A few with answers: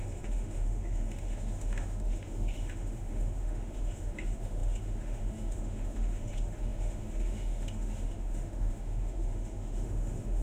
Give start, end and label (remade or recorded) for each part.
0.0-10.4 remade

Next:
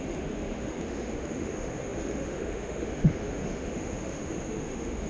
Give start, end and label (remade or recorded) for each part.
0.0-5.1 remade

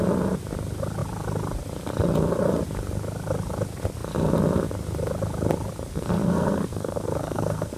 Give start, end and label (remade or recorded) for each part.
0.0-5.9 recorded; 5.9-7.8 remade

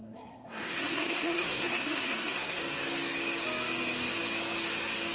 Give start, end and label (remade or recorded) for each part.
0.0-2.6 remade; 2.6-5.1 recorded

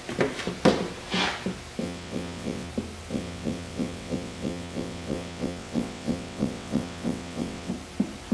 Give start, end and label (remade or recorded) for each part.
0.0-1.8 recorded; 1.8-2.7 remade; 2.7-3.1 recorded; 3.1-7.7 remade; 7.7-8.3 recorded

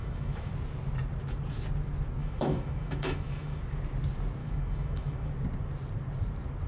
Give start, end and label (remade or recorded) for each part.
0.0-0.5 remade; 0.5-2.2 recorded; 2.2-3.6 remade; 3.6-4.4 recorded; 4.4-5.3 remade; 5.3-6.7 recorded